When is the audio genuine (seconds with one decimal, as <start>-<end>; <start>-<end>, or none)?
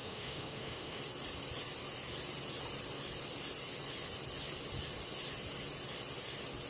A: 1.0-6.7